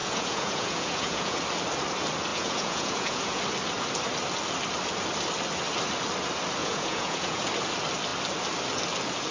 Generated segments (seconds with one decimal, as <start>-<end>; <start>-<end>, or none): 0.0-1.4; 2.3-3.4; 6.6-7.5